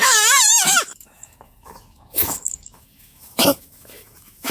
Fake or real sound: fake